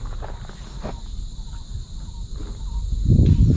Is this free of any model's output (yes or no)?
yes